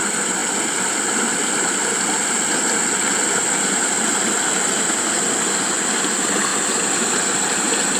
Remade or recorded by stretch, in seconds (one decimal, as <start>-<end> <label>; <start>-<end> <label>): 0.0-8.0 recorded